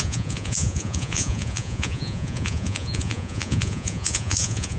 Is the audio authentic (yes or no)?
no